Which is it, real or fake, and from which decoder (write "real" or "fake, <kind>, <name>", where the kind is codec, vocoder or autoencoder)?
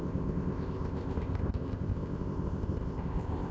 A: fake, codec, ZipCodec